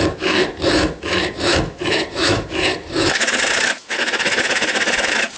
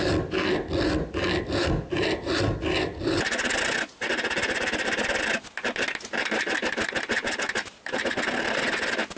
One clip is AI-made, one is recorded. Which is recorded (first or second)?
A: second